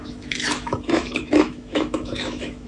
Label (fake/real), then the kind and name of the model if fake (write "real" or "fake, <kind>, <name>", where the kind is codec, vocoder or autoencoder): fake, autoencoder, DAC-VAE